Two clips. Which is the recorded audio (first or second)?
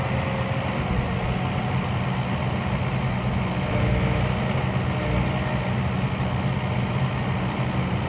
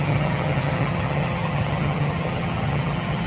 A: first